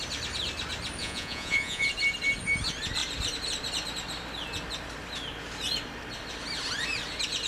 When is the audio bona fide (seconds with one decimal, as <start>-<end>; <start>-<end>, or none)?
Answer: 0.0-1.0; 1.9-7.5

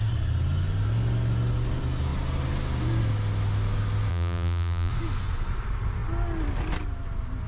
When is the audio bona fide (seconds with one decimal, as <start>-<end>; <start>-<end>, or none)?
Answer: 0.0-4.1; 4.9-7.5

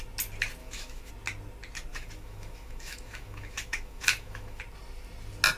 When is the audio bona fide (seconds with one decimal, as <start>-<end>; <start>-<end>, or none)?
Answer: 0.0-0.6; 1.1-1.9; 4.6-5.6

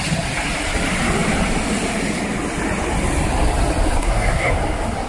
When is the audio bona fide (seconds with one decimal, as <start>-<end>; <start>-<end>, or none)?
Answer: 0.0-4.0; 4.5-5.1

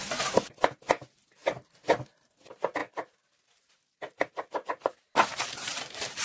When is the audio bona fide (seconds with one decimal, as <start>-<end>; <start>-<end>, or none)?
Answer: 0.0-6.2

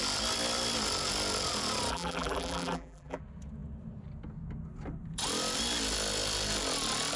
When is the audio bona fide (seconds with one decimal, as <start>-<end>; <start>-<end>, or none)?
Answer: 0.0-1.9; 3.2-7.2

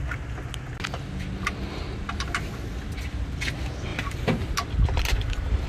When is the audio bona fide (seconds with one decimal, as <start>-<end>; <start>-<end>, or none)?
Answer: 0.0-3.9; 4.5-5.7

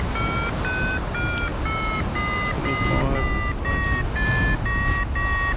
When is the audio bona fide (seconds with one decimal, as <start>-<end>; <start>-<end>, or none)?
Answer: 0.0-5.6